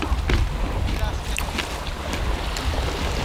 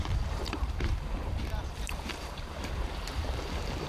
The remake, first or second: second